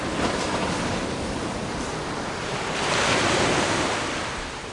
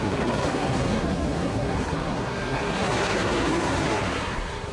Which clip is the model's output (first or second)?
second